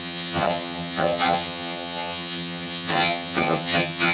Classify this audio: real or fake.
fake